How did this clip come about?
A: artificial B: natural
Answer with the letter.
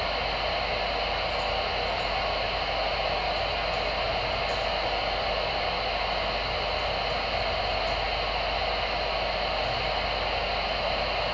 B